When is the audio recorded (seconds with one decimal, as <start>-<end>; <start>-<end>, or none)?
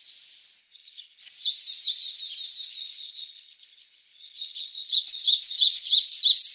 0.0-0.6; 1.3-2.8; 5.9-6.5